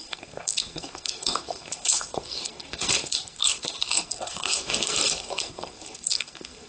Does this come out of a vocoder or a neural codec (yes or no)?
yes